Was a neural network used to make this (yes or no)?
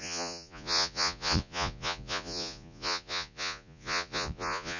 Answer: yes